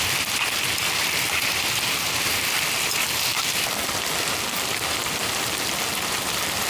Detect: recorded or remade remade